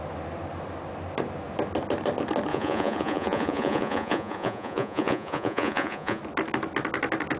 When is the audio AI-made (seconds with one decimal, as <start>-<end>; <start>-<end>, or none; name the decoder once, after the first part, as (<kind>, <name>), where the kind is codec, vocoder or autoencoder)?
2.5-6.2 (vocoder, Vocos)